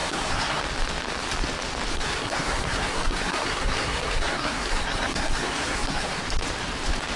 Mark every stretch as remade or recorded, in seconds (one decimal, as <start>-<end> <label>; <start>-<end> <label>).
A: 0.0-0.6 remade; 0.6-1.9 recorded; 1.9-6.2 remade; 6.2-7.2 recorded

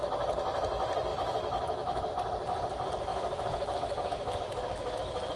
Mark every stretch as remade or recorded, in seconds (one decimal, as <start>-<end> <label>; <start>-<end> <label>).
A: 0.0-1.1 recorded; 1.1-2.1 remade; 2.1-3.1 recorded; 3.1-5.4 remade

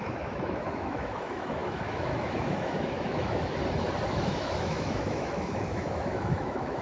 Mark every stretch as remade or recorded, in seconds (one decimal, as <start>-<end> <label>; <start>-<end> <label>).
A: 0.0-3.6 remade; 3.6-4.1 recorded; 4.1-6.8 remade

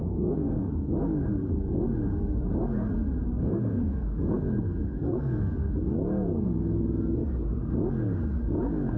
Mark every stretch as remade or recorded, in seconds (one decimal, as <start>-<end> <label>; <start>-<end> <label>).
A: 0.0-0.9 remade; 0.9-3.5 recorded; 3.5-5.7 remade; 5.7-9.0 recorded

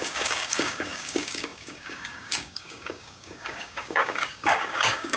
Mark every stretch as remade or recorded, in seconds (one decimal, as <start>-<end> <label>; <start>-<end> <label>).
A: 0.0-5.2 remade